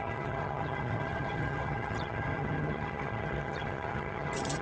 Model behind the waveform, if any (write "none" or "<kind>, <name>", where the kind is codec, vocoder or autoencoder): vocoder, HiFi-GAN